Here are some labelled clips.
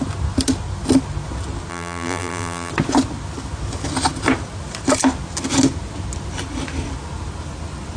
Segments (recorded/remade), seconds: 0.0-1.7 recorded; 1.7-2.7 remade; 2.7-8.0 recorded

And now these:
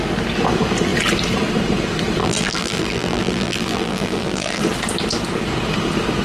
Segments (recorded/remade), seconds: 0.0-2.2 recorded; 2.2-4.6 remade; 4.6-6.2 recorded

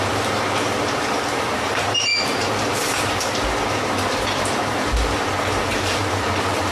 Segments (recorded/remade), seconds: 0.0-6.7 remade

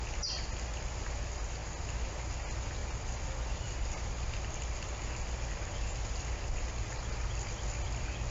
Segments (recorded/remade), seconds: 0.0-8.3 recorded

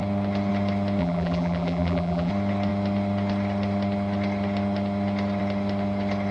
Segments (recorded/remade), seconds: 0.0-1.0 recorded; 1.0-2.3 remade; 2.3-6.3 recorded